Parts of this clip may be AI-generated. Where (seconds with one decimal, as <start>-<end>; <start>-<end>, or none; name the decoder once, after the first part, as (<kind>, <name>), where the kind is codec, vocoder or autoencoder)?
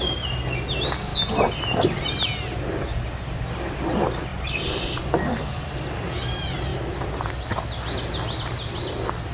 none